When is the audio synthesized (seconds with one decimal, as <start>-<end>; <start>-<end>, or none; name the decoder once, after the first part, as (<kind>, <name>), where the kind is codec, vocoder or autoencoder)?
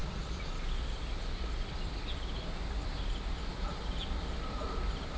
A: none